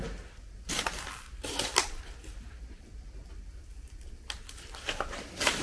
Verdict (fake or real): real